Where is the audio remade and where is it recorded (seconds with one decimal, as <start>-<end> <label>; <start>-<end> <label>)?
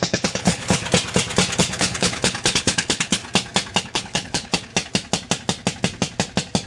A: 0.0-0.8 remade; 0.8-1.6 recorded; 1.6-3.2 remade; 3.2-3.8 recorded; 3.8-4.7 remade; 4.7-6.7 recorded